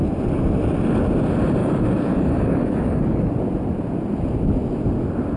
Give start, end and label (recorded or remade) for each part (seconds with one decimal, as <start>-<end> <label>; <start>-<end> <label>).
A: 0.0-1.6 recorded; 1.6-3.3 remade; 3.3-5.4 recorded

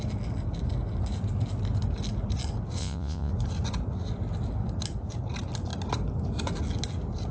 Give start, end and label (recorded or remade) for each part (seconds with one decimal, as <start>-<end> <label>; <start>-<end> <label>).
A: 0.0-2.8 recorded; 2.8-3.3 remade; 3.3-7.3 recorded

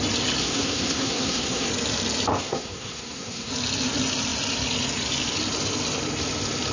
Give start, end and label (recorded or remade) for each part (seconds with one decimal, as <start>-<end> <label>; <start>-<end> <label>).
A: 0.0-0.4 recorded; 0.4-1.7 remade; 1.7-2.3 recorded; 2.3-3.5 remade; 3.5-6.7 recorded

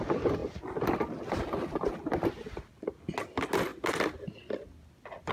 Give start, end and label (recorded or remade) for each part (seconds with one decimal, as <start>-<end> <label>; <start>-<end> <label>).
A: 0.0-5.3 recorded

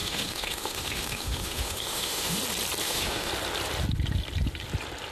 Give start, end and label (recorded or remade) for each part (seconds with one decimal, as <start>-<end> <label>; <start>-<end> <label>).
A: 0.0-2.4 remade; 2.4-2.8 recorded; 2.8-3.3 remade; 3.3-5.1 recorded

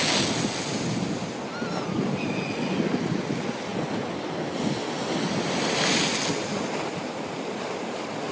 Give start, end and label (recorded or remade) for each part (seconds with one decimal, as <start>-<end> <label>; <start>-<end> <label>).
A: 0.0-8.3 recorded